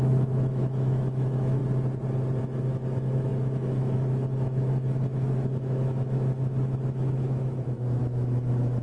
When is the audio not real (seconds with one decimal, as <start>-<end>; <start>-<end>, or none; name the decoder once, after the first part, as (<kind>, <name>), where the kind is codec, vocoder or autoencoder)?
0.0-1.6 (autoencoder, DAC-VAE); 2.4-8.8